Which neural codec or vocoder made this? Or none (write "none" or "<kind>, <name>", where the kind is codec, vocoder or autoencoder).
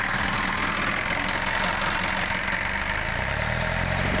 none